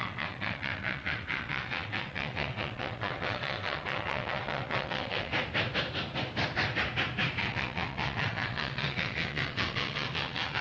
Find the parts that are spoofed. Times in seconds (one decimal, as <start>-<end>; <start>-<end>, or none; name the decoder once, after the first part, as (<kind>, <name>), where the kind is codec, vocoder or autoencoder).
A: 0.0-5.3 (vocoder, WaveNeXt); 7.4-10.6